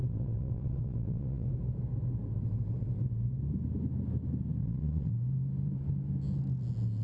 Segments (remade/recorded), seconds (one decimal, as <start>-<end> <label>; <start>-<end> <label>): 0.0-1.5 remade; 1.5-4.6 recorded; 4.6-5.1 remade; 5.1-7.0 recorded